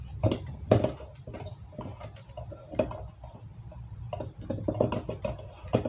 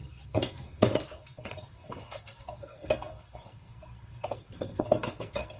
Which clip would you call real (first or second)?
first